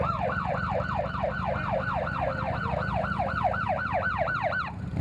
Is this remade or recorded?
remade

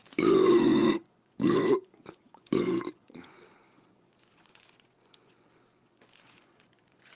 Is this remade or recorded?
remade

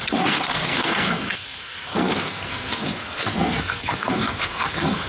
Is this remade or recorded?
remade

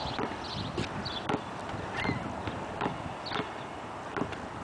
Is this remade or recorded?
recorded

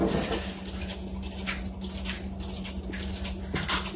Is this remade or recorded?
recorded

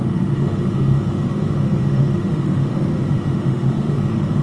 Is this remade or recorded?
remade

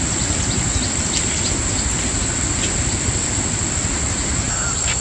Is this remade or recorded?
recorded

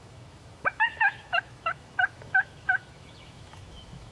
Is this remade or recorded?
remade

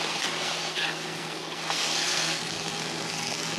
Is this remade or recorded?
remade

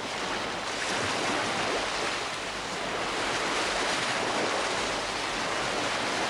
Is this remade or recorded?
recorded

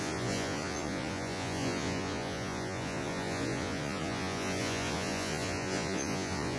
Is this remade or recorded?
remade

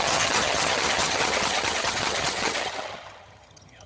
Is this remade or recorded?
remade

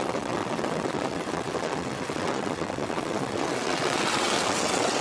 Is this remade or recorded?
remade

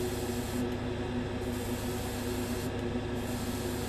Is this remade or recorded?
recorded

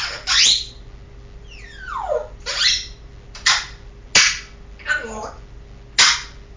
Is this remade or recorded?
recorded